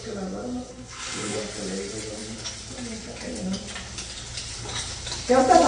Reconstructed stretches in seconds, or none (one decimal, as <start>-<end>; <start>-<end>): 0.7-1.4